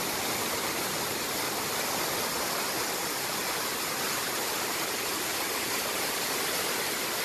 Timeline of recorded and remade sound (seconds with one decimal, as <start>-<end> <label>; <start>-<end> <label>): 0.0-7.2 remade